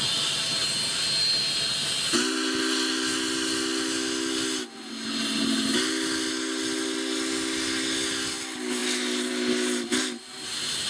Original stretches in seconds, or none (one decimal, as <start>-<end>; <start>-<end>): 0.0-10.9